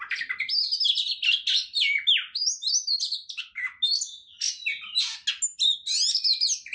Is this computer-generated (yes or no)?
no